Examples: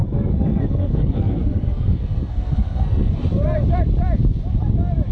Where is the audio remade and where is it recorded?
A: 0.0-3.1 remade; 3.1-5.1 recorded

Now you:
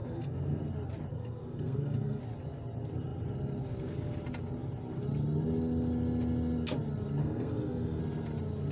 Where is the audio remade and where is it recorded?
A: 0.0-0.6 remade; 0.6-1.1 recorded; 1.1-2.2 remade; 2.2-7.2 recorded; 7.2-8.0 remade; 8.0-8.7 recorded

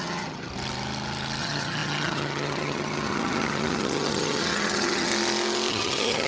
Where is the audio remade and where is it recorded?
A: 0.0-0.5 remade; 0.5-1.4 recorded; 1.4-5.1 remade; 5.1-5.7 recorded; 5.7-6.3 remade

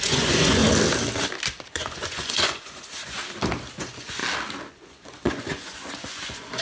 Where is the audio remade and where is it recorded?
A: 0.0-0.6 remade; 0.6-1.7 recorded; 1.7-3.2 remade; 3.2-3.8 recorded; 3.8-4.2 remade; 4.2-4.7 recorded; 4.7-6.6 remade

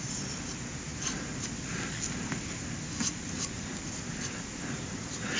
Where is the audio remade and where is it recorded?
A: 0.0-5.4 recorded

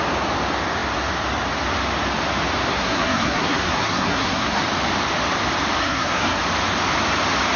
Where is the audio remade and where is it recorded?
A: 0.0-2.7 recorded; 2.7-4.6 remade; 4.6-5.8 recorded; 5.8-6.4 remade; 6.4-7.6 recorded

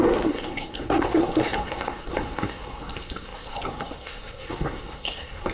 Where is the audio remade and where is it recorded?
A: 0.0-5.5 remade

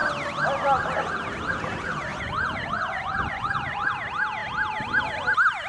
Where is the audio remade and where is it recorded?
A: 0.0-2.1 recorded; 2.1-3.9 remade; 3.9-5.7 recorded